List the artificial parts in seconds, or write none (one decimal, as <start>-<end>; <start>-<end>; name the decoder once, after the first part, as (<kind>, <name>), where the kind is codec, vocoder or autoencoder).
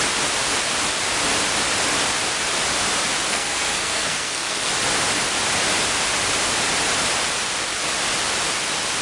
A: 3.3-4.7 (codec, SNAC)